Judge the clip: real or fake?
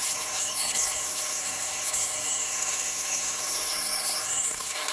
fake